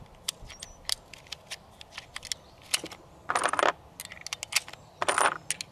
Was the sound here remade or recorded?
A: recorded